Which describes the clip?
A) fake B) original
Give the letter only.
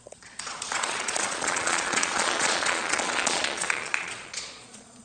A